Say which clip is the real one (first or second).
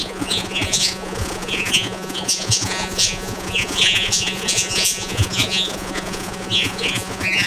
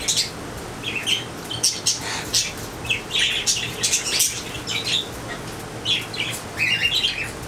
second